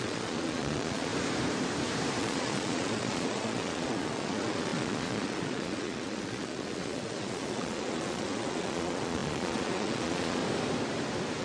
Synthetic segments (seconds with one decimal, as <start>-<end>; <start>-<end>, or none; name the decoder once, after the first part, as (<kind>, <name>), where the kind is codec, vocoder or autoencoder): 0.0-1.1 (vocoder, Vocos); 2.2-10.4